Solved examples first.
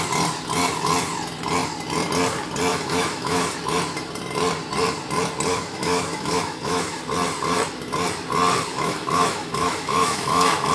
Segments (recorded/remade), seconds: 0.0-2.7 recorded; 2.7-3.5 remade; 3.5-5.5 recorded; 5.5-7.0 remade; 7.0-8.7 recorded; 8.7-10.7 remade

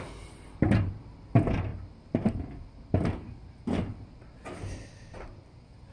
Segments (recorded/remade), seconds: 0.0-5.9 recorded

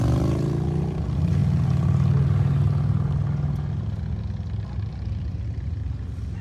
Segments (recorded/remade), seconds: 0.0-6.4 recorded

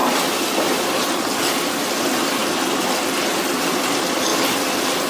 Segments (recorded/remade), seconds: 0.0-2.0 remade; 2.0-5.1 recorded

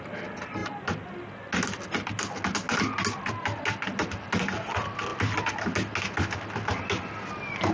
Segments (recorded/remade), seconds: 0.0-7.7 recorded